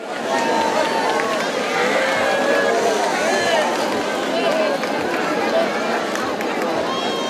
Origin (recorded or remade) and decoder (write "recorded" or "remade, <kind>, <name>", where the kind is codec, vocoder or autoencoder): recorded